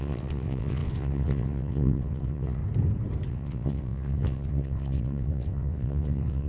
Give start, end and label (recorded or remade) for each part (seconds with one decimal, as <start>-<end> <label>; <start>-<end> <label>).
0.0-2.6 remade; 2.6-3.3 recorded; 3.3-6.5 remade

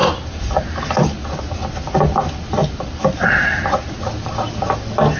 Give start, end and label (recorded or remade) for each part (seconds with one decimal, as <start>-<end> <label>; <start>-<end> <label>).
0.0-1.4 remade; 1.4-2.6 recorded; 2.6-3.7 remade; 3.7-5.2 recorded